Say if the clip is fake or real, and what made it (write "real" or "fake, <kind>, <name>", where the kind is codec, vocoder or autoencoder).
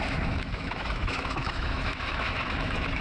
fake, autoencoder, DAC-VAE